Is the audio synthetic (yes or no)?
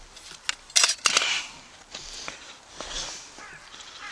no